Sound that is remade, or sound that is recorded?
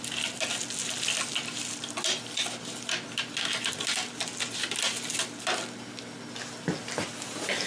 recorded